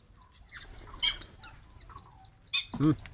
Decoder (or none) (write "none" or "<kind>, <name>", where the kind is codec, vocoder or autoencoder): none